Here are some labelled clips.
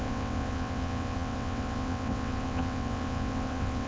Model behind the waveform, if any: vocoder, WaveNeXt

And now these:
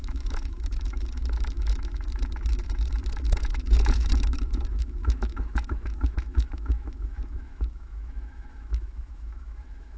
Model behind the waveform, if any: autoencoder, DAC-VAE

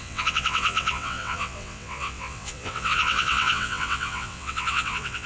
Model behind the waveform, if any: vocoder, WaveNeXt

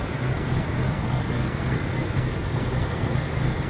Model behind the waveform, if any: codec, SNAC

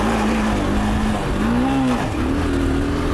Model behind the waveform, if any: none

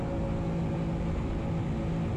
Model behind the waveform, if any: none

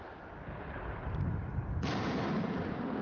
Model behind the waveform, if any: none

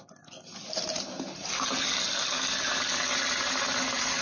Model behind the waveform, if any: none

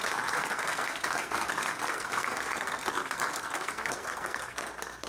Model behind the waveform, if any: codec, SNAC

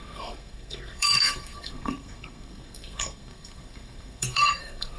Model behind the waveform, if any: codec, SNAC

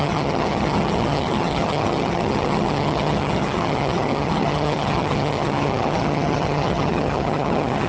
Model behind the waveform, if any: vocoder, HiFi-GAN